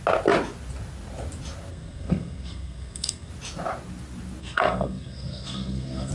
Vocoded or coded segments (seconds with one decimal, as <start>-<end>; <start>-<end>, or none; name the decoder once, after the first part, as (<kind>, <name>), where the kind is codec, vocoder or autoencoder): 1.7-3.3 (codec, SNAC); 4.4-6.1

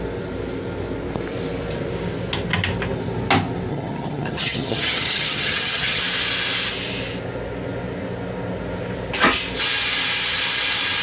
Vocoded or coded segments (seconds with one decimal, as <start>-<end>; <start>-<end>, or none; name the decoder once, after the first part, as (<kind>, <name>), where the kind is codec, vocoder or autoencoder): 3.7-6.0 (vocoder, HiFi-GAN)

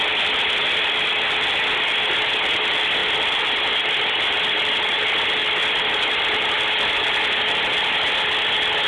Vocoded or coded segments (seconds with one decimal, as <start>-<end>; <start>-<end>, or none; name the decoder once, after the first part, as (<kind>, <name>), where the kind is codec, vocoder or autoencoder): none

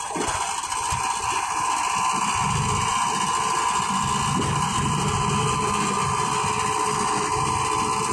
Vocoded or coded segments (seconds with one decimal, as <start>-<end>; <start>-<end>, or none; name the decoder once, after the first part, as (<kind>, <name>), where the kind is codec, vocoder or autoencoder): none

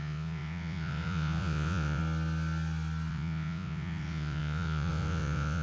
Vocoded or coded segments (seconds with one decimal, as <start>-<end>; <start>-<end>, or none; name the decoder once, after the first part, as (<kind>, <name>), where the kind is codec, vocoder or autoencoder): 0.0-2.0 (vocoder, Vocos); 3.1-5.6

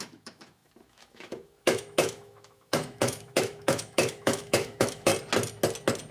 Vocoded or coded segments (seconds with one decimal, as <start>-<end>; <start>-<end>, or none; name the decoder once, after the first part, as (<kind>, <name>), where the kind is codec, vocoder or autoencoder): 0.0-5.1 (autoencoder, DAC-VAE)

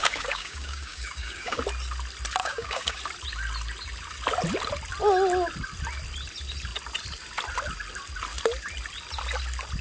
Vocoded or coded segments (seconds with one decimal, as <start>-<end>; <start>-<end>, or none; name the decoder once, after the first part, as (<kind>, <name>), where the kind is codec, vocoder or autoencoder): 0.0-1.6 (codec, DAC); 2.4-3.0

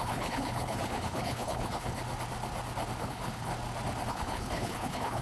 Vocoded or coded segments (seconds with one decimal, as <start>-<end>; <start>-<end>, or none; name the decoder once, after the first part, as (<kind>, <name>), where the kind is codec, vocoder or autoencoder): 0.0-2.0 (codec, HILCodec); 3.0-3.5; 4.1-5.2